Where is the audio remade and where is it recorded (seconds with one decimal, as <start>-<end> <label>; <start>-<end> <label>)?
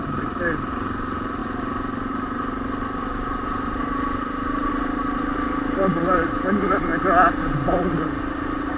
0.0-6.9 remade; 6.9-7.4 recorded; 7.4-8.8 remade